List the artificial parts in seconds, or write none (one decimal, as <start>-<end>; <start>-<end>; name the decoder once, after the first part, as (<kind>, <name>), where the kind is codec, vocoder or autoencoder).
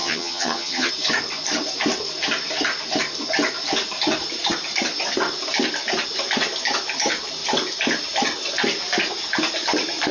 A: 0.0-0.9 (vocoder, HiFi-GAN)